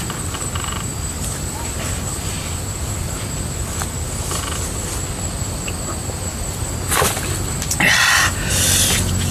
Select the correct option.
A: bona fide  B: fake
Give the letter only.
A